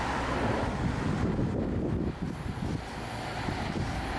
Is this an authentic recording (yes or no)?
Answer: yes